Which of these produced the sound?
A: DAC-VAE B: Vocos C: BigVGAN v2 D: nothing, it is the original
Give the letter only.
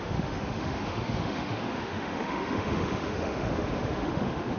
A